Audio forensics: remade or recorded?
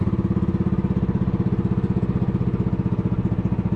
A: recorded